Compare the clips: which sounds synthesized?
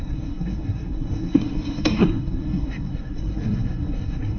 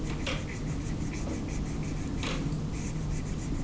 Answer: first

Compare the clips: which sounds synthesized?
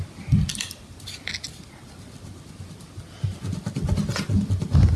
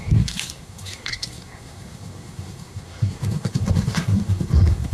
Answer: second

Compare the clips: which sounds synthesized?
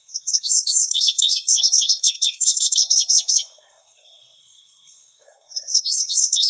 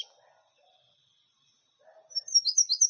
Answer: first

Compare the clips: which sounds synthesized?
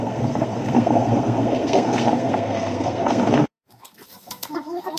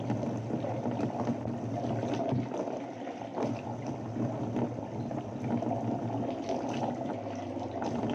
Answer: first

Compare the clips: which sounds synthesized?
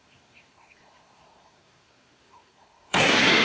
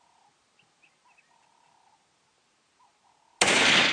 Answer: first